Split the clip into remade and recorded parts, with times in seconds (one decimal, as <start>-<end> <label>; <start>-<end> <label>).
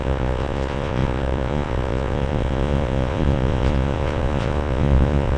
0.0-5.4 remade